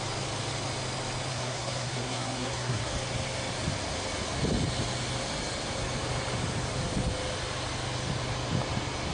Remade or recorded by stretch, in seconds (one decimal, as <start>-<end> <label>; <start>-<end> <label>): 0.0-1.3 recorded; 1.3-2.9 remade; 2.9-9.1 recorded